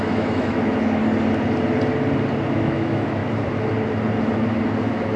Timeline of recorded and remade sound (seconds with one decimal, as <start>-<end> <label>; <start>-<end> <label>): 0.0-1.0 remade; 1.0-2.5 recorded; 2.5-3.2 remade; 3.2-4.8 recorded; 4.8-5.2 remade